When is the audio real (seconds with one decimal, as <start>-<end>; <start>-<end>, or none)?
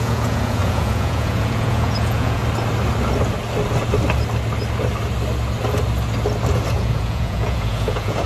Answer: 2.4-6.7